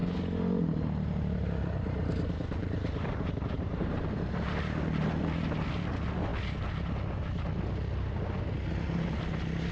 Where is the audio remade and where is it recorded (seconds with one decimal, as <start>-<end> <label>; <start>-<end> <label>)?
0.0-4.3 remade; 4.3-9.7 recorded